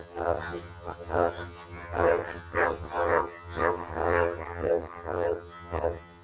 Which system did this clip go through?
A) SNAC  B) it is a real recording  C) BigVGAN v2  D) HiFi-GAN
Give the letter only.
D